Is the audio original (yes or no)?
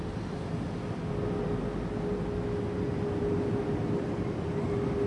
yes